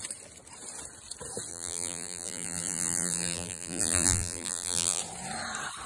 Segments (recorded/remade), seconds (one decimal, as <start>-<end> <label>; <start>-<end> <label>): 0.0-1.5 recorded; 1.5-5.0 remade; 5.0-5.9 recorded